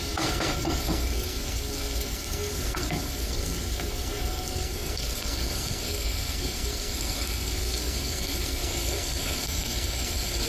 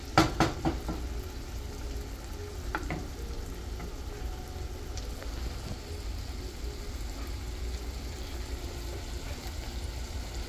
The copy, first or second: first